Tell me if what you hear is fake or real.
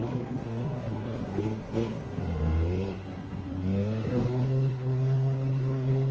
fake